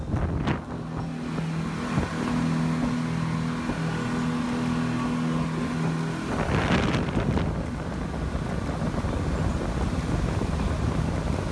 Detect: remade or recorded recorded